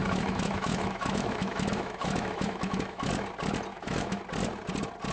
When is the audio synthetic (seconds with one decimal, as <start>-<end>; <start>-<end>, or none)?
0.0-3.1; 3.7-4.2